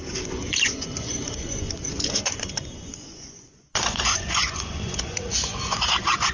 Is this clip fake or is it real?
fake